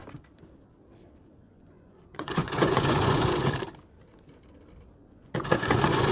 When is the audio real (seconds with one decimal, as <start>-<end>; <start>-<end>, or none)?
0.0-1.3; 3.5-5.0